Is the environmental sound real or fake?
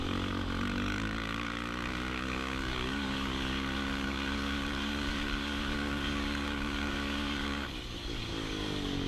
fake